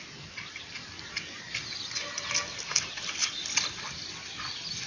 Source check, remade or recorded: recorded